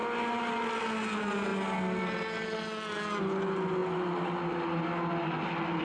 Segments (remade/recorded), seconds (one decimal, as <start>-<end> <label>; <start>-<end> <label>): 0.0-5.8 recorded